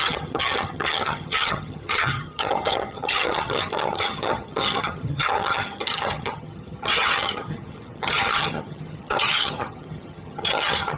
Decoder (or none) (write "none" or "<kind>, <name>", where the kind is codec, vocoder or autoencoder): vocoder, HiFi-GAN